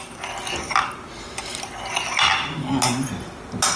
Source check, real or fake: real